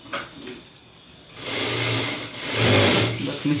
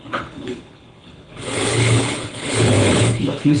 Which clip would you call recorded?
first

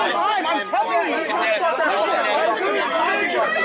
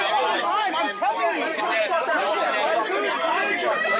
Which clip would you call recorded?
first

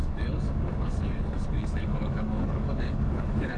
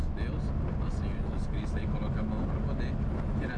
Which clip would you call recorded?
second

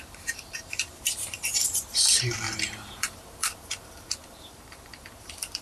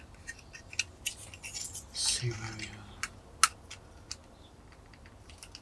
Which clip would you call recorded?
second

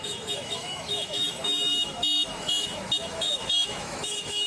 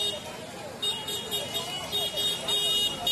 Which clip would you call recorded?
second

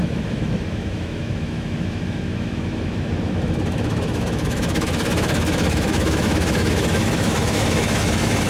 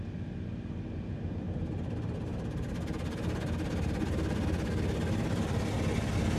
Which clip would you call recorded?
second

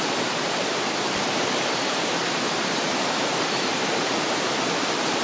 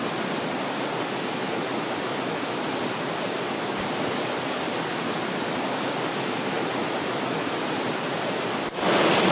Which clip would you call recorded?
second